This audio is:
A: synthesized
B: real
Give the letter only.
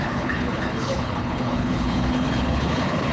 A